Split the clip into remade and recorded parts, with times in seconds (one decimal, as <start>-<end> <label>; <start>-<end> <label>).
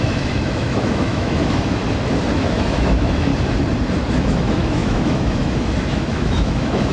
0.0-1.8 remade; 1.8-2.3 recorded; 2.3-3.3 remade; 3.3-4.2 recorded; 4.2-6.9 remade